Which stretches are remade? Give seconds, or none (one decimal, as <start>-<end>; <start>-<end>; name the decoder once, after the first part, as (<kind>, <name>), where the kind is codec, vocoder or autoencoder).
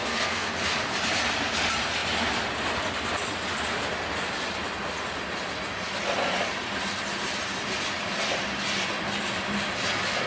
0.0-0.5 (codec, SNAC)